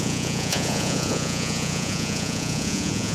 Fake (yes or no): yes